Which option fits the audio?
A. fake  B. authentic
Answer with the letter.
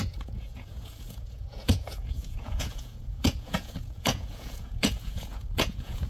A